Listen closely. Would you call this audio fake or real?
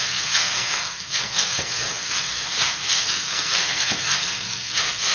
fake